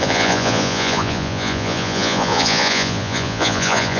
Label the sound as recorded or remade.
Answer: remade